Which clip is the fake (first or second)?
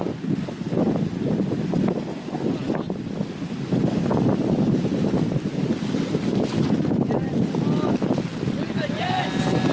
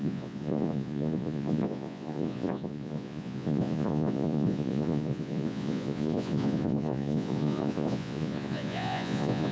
second